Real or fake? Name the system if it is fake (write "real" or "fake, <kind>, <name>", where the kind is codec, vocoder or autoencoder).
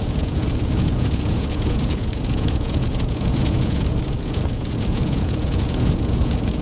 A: fake, vocoder, Vocos